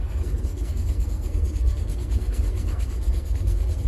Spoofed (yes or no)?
yes